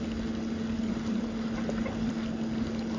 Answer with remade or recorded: recorded